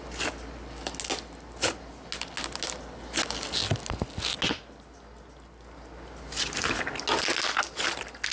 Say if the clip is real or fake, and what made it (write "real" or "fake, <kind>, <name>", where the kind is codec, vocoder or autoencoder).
real